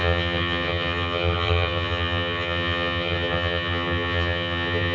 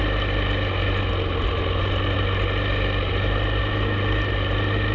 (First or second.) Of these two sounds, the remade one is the first